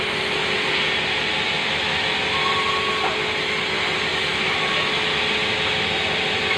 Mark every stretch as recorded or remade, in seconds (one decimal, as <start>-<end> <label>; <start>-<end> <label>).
0.0-1.6 recorded; 1.6-2.2 remade; 2.2-4.1 recorded; 4.1-5.2 remade; 5.2-6.6 recorded